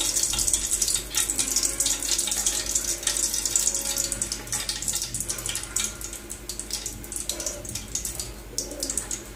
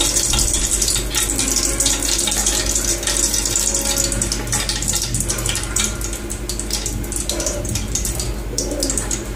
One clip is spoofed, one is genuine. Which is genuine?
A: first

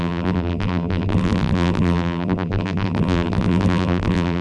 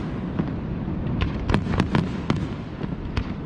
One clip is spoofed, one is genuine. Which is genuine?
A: second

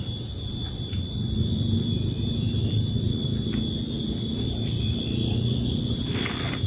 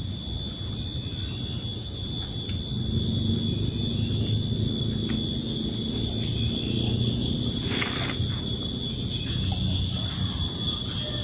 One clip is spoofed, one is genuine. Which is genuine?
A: second